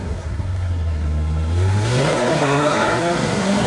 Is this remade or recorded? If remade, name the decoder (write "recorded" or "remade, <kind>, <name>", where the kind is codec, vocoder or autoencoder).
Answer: remade, codec, SNAC